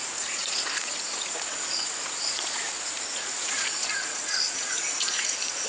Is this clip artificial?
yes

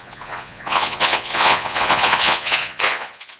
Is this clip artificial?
yes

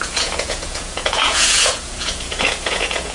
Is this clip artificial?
yes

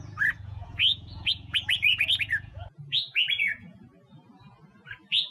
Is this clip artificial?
yes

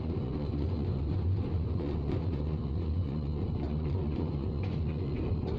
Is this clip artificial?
yes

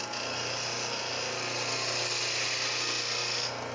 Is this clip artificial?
no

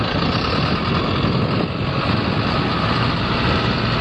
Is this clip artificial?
no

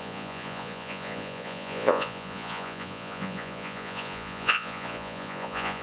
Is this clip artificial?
yes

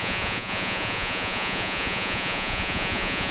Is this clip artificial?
yes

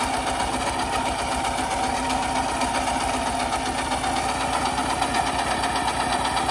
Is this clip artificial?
no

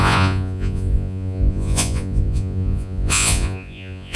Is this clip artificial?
yes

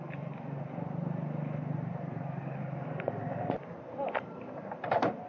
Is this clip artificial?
no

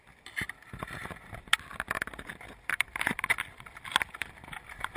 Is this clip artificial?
no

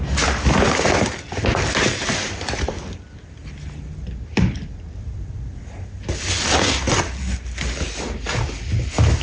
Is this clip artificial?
no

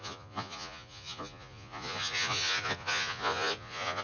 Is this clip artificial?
yes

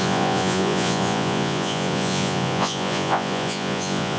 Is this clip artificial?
yes